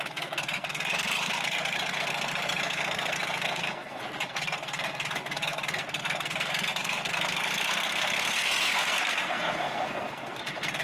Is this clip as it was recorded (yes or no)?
no